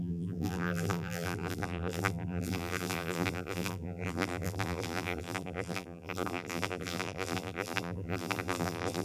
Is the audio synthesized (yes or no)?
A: yes